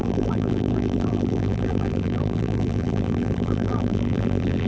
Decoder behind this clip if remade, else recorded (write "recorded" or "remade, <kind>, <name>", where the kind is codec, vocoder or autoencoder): remade, vocoder, BigVGAN v2